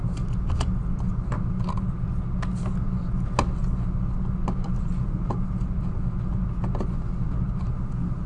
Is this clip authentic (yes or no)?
yes